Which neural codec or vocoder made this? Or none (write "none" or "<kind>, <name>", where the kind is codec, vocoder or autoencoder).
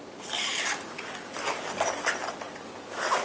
none